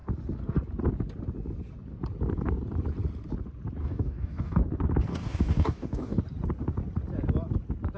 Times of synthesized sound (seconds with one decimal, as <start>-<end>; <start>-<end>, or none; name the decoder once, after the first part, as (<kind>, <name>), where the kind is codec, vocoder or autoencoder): 3.8-4.6 (codec, DAC); 5.1-6.2